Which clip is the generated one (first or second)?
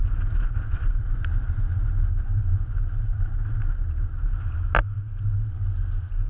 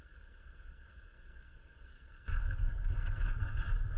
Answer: second